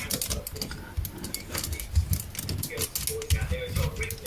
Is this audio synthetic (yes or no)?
no